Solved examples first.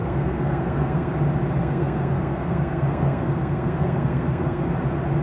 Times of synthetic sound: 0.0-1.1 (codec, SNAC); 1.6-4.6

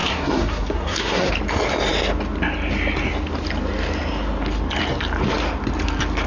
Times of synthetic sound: 0.0-1.3 (codec, SNAC)

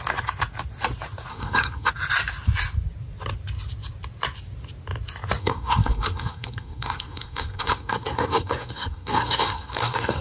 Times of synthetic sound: 1.3-1.9 (codec, SNAC); 5.4-10.2

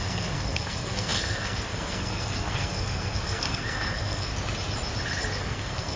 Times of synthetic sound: 0.0-4.3 (codec, SNAC); 5.4-6.0

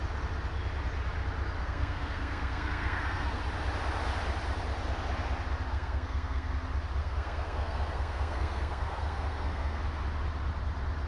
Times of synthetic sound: 1.6-3.4 (codec, SNAC); 5.7-6.5; 7.0-9.8

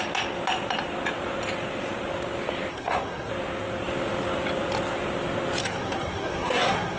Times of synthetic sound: 2.7-3.3 (codec, SNAC); 5.6-7.0